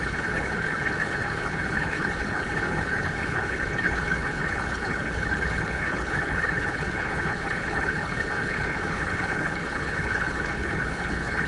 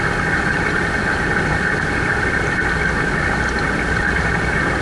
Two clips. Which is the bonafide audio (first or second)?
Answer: second